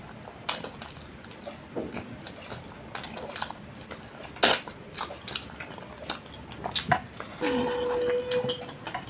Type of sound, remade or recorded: recorded